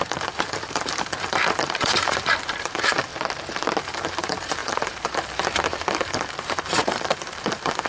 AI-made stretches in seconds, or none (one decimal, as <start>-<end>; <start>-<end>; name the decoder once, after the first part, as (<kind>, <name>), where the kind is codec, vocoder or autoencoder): 0.0-3.1 (vocoder, BigVGAN v2); 3.8-7.9